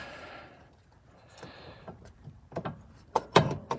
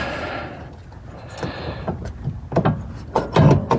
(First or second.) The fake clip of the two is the first